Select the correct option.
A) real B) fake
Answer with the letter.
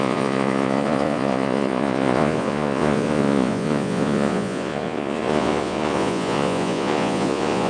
B